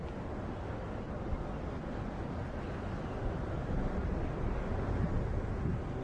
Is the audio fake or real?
real